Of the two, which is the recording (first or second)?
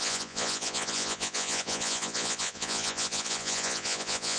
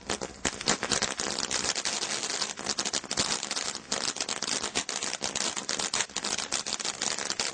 second